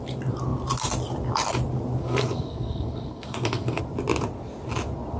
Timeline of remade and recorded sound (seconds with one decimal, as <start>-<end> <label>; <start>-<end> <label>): 0.0-2.0 recorded; 2.0-3.8 remade; 3.8-5.2 recorded